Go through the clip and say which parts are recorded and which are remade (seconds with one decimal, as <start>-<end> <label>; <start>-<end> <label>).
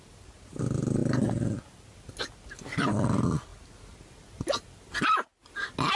0.0-6.0 recorded